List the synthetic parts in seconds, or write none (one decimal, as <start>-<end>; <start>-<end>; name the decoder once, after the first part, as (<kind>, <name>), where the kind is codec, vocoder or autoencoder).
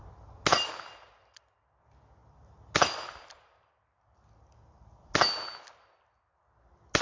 none